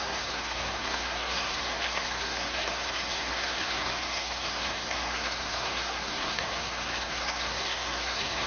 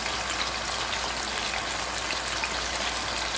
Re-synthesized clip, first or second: first